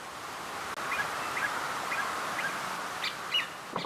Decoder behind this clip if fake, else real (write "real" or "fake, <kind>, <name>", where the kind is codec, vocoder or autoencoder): real